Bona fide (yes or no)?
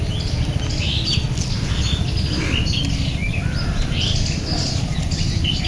yes